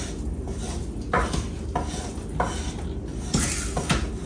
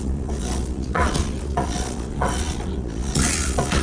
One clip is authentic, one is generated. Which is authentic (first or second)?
first